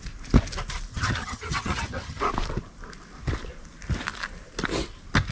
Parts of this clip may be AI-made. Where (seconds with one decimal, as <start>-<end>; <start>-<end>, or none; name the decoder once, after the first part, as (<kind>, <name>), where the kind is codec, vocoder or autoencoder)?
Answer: 0.9-2.2 (vocoder, HiFi-GAN)